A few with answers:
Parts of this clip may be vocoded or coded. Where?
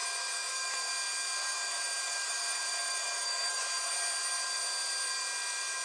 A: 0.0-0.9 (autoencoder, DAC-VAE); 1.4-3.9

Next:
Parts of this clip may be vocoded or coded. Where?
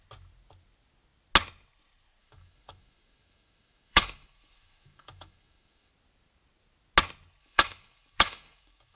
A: 2.2-5.9 (autoencoder, DAC-VAE); 7.4-9.0